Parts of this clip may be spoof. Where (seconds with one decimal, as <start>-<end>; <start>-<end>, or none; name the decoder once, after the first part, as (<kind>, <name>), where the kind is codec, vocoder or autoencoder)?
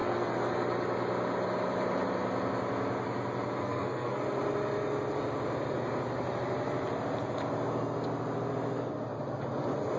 0.0-0.5 (codec, SNAC); 3.6-4.2